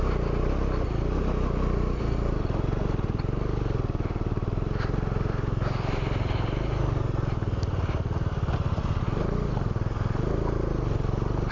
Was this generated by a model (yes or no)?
no